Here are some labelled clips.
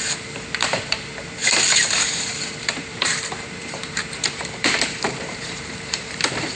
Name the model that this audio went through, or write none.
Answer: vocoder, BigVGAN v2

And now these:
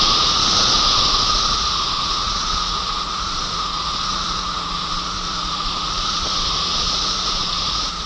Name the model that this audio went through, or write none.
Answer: vocoder, Vocos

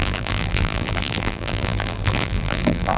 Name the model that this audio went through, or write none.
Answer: vocoder, BigVGAN v2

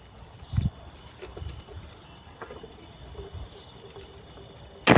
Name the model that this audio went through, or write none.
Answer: none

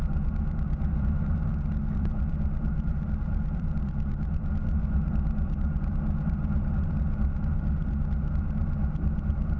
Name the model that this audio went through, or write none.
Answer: vocoder, BigVGAN v2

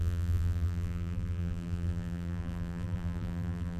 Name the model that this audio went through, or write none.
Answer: vocoder, BigVGAN v2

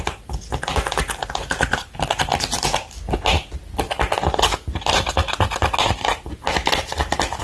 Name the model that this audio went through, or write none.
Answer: none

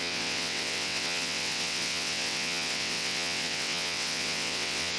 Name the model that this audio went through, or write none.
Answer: vocoder, WaveNeXt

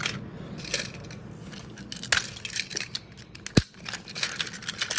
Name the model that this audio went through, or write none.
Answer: none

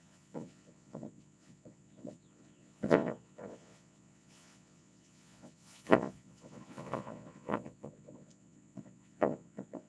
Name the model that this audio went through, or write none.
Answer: vocoder, Vocos